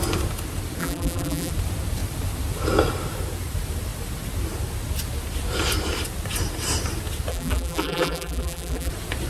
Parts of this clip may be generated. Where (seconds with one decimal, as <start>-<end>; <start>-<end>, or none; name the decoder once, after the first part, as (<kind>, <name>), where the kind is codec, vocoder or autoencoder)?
0.8-1.5 (vocoder, BigVGAN v2); 7.3-8.9